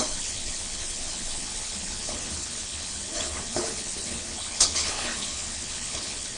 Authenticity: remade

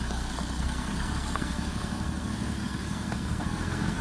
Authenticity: remade